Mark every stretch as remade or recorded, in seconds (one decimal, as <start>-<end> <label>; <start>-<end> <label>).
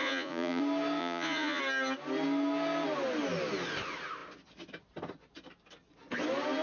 0.0-0.6 remade; 0.6-1.0 recorded; 1.0-1.6 remade; 1.6-6.6 recorded